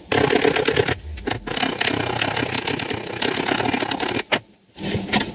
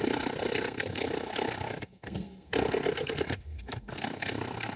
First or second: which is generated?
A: second